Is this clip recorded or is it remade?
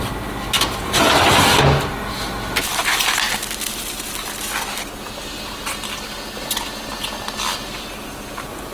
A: recorded